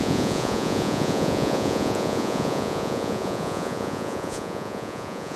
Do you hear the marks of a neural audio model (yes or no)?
yes